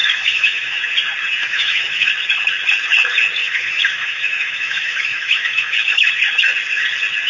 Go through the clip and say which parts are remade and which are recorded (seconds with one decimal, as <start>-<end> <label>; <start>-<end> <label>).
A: 0.0-0.8 remade; 0.8-1.4 recorded; 1.4-2.1 remade; 2.1-3.4 recorded; 3.4-6.1 remade; 6.1-7.3 recorded